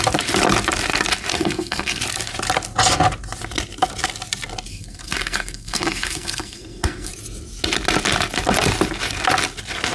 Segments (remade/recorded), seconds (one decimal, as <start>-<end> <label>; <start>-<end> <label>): 0.0-1.3 recorded; 1.3-2.0 remade; 2.0-4.7 recorded; 4.7-7.1 remade; 7.1-9.9 recorded